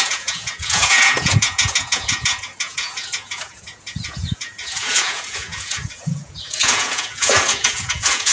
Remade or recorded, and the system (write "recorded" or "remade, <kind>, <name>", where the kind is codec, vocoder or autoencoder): remade, vocoder, Vocos